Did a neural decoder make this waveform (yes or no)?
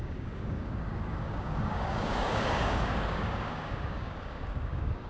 yes